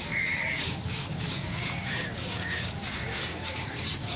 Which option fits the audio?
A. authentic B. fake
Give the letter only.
B